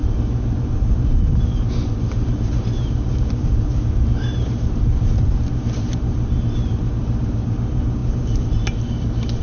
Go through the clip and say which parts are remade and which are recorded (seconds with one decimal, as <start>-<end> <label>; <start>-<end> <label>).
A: 0.0-9.4 remade